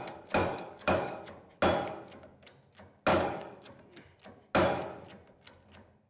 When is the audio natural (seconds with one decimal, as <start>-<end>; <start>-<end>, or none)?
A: 0.0-0.4; 1.2-3.1; 3.8-6.1